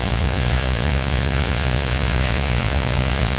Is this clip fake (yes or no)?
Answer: yes